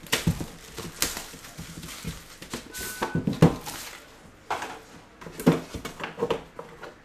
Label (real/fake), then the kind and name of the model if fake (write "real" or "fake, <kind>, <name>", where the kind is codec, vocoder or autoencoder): real